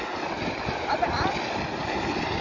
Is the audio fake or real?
real